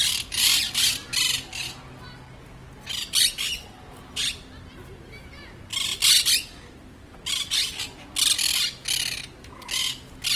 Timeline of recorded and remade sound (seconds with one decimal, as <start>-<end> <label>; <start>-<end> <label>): 0.0-10.4 recorded